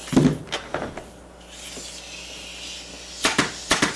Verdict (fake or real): real